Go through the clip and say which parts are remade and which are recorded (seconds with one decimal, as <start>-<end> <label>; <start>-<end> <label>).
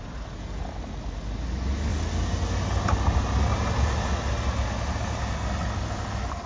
0.0-6.5 recorded